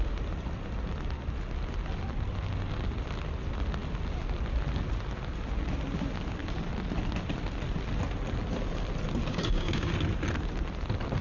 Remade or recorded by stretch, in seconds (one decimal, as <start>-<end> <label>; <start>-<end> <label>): 0.0-9.3 recorded; 9.3-9.9 remade; 9.9-11.2 recorded